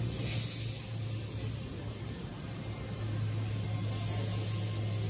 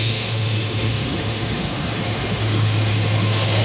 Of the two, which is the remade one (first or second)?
second